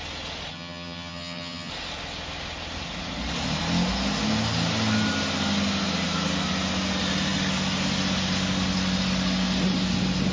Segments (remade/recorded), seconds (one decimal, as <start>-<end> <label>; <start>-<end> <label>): 0.0-0.5 recorded; 0.5-1.7 remade; 1.7-10.3 recorded